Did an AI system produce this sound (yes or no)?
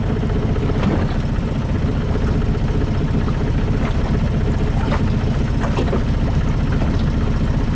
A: no